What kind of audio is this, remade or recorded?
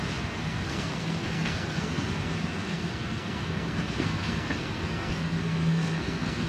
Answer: remade